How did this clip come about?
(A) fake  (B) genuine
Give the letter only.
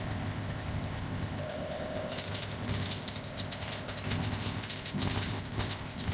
A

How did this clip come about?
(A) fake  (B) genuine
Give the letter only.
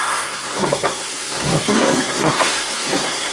A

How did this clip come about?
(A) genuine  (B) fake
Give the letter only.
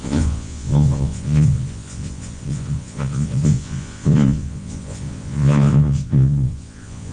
B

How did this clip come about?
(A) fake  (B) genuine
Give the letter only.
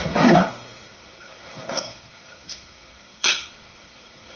A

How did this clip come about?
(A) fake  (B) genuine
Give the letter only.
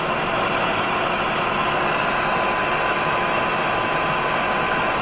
B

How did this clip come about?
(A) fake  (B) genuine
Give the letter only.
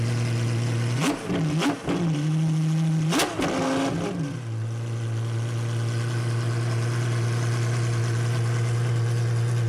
B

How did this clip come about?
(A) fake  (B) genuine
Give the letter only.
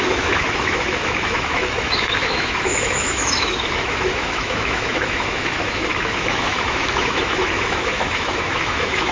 A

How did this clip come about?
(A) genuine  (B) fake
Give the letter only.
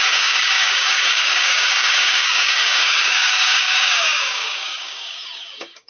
B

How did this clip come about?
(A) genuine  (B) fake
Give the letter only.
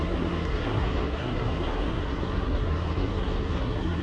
B